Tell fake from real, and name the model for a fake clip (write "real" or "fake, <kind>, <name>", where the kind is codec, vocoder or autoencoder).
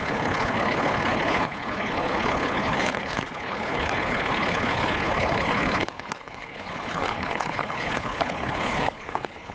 fake, codec, HILCodec